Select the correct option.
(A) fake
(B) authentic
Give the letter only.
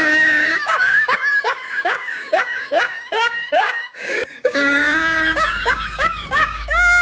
A